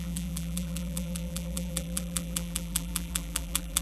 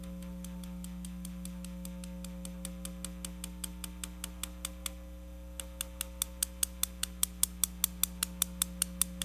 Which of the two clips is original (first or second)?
second